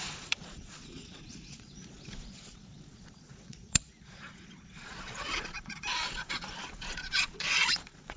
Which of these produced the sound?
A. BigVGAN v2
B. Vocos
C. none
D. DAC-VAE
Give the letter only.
B